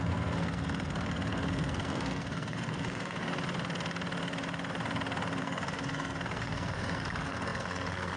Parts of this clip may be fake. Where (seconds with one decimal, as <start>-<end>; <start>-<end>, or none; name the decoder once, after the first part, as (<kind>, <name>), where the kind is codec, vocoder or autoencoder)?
0.0-3.2 (codec, SNAC); 5.4-8.2